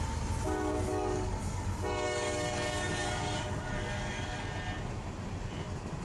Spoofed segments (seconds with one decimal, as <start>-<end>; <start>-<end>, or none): 0.9-4.5